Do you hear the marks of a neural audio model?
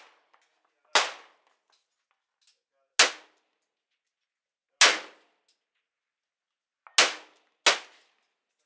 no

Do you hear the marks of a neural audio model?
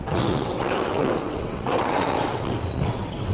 yes